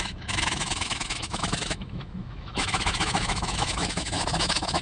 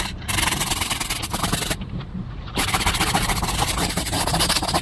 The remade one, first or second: first